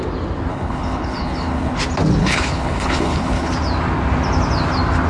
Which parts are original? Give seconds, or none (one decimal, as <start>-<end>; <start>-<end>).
0.0-0.5; 1.8-2.2; 3.5-5.1

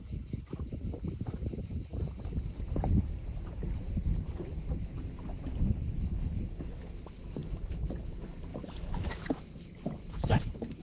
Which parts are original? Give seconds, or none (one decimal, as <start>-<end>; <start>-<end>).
0.0-10.0